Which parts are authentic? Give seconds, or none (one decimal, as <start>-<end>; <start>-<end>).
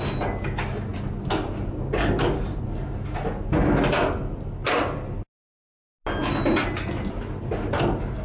0.0-0.9; 1.7-4.6; 5.2-8.2